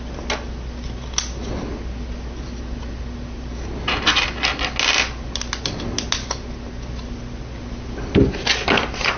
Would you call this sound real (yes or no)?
yes